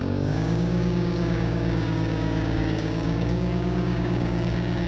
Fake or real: fake